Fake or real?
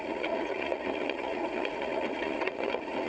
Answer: fake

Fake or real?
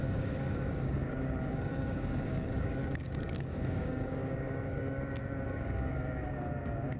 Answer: fake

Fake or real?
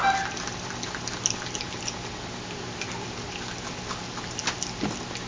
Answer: real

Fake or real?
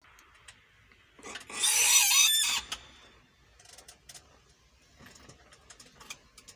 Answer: real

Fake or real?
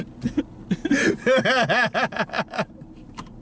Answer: real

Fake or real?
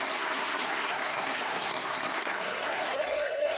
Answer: fake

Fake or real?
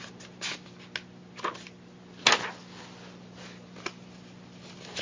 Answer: real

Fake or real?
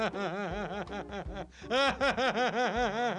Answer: real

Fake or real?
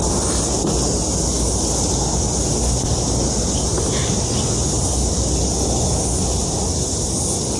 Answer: real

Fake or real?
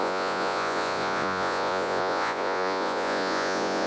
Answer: fake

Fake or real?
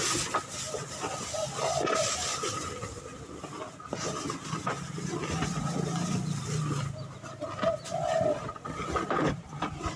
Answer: real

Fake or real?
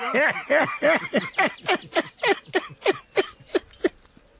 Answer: real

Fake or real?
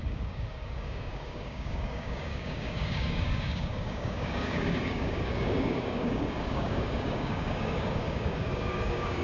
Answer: fake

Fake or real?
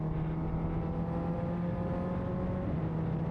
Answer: real